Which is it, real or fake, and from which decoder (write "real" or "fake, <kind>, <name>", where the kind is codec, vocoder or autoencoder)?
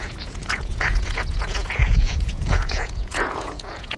fake, vocoder, Vocos